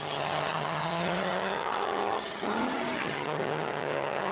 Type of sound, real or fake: fake